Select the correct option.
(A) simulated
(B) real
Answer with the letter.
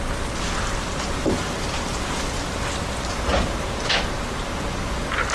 B